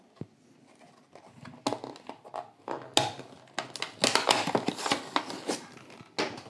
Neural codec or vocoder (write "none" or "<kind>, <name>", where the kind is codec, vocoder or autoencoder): none